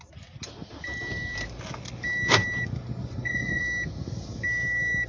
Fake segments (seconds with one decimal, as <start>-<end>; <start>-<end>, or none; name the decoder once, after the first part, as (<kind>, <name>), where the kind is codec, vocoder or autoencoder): 3.0-3.6 (vocoder, Vocos)